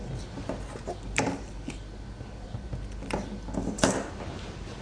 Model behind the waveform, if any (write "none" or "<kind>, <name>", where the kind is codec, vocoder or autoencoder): none